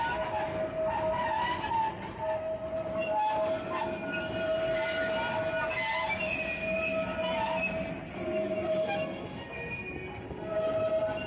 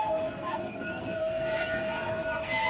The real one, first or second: first